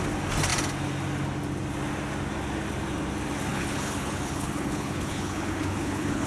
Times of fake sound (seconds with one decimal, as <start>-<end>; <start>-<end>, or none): 3.5-6.3

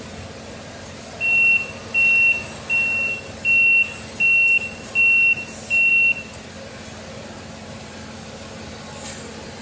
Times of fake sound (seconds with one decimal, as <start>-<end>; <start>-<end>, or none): none

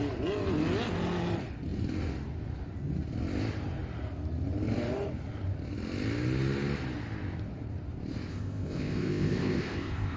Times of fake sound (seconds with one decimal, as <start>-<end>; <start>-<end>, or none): 8.3-10.2

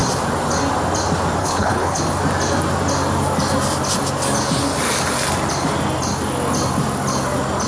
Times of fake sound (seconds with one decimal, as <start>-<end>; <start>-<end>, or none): 1.4-2.0

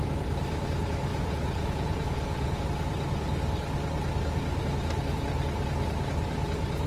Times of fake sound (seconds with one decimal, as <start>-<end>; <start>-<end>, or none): 1.1-2.6

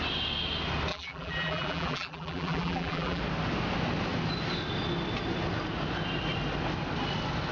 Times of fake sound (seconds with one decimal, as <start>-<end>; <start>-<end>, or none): 0.9-3.2